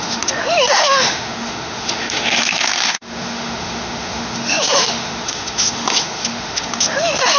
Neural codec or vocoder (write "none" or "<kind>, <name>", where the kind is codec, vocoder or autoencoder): autoencoder, DAC-VAE